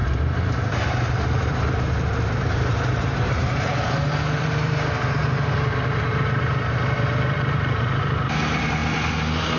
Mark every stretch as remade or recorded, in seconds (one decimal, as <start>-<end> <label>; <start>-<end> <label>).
0.0-8.8 remade; 8.8-9.6 recorded